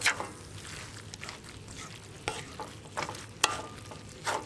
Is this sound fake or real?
real